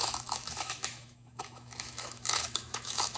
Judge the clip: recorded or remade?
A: remade